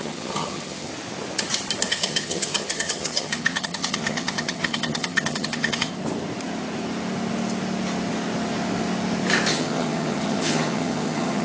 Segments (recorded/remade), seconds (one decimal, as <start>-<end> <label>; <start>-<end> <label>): 0.0-0.9 remade; 0.9-1.9 recorded; 1.9-5.9 remade; 5.9-9.5 recorded; 9.5-11.4 remade